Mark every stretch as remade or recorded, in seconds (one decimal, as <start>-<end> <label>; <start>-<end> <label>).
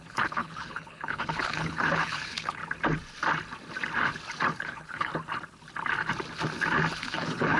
0.0-2.6 remade; 2.6-4.6 recorded; 4.6-5.1 remade; 5.1-6.9 recorded; 6.9-7.6 remade